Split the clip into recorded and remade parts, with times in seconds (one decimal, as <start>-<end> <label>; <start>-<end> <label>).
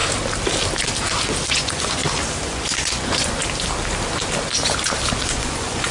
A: 0.0-1.5 recorded; 1.5-2.0 remade; 2.0-2.5 recorded; 2.5-3.4 remade; 3.4-5.1 recorded; 5.1-5.9 remade